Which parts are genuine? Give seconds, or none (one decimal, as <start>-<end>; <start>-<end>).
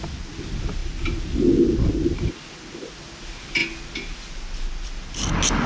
0.0-5.7